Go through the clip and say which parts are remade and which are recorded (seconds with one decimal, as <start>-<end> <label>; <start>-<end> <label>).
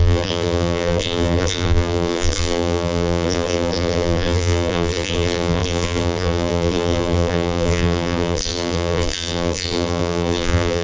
0.0-10.8 remade